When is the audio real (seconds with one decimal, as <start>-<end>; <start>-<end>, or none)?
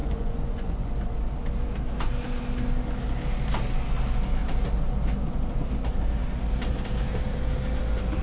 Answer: 0.9-8.2